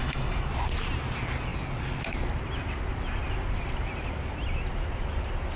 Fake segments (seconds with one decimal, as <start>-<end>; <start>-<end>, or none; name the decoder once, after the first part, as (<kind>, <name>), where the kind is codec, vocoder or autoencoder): 0.0-0.5 (autoencoder, DAC-VAE)